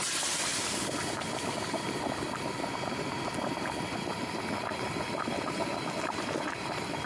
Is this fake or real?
real